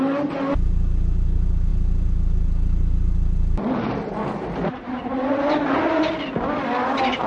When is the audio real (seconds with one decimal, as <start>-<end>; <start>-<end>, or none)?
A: 0.0-7.3